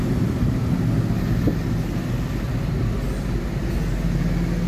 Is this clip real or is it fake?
real